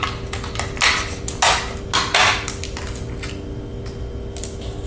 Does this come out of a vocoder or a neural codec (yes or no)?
no